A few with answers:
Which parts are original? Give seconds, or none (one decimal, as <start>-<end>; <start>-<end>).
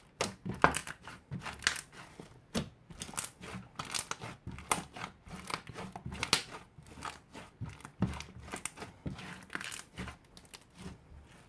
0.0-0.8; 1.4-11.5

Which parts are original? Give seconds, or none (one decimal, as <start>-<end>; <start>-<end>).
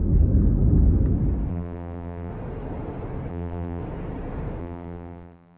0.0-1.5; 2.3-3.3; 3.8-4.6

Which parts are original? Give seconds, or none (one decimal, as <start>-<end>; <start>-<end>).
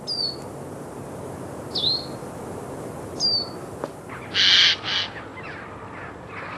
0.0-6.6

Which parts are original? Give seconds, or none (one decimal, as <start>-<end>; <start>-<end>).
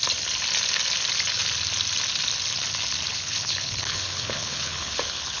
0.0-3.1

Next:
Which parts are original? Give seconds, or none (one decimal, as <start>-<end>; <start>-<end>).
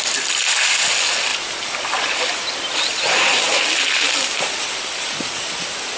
0.0-6.0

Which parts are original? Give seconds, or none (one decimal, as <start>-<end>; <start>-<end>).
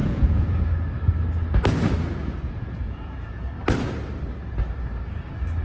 0.7-2.2; 3.5-5.6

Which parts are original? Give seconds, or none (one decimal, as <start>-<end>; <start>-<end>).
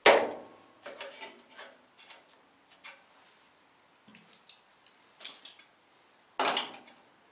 0.0-7.3